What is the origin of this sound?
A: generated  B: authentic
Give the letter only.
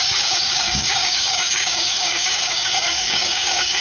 A